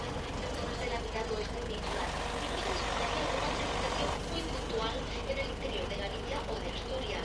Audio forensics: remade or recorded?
recorded